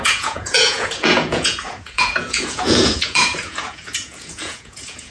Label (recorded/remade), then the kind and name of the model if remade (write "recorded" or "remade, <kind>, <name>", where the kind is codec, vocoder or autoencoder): remade, vocoder, Vocos